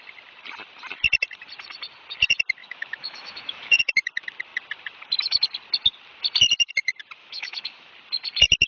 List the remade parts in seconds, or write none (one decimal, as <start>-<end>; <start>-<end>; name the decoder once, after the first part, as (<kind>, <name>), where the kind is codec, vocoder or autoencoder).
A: 2.6-3.8 (autoencoder, DAC-VAE); 7.2-7.9